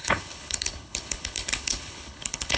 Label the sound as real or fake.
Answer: fake